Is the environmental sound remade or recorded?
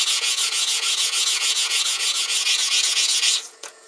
remade